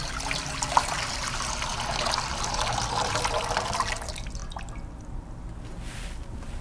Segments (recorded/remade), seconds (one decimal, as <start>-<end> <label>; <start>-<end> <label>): 0.0-6.6 recorded